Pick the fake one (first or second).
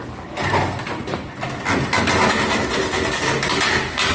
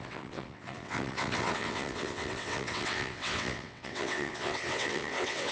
second